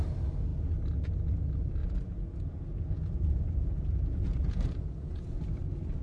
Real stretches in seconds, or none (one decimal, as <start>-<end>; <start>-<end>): 0.0-1.8; 5.4-6.0